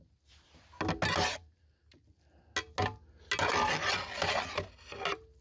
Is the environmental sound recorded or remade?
recorded